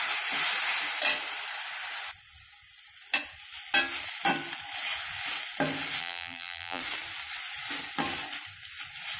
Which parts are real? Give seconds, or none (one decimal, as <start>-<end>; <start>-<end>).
0.0-6.0; 6.8-9.2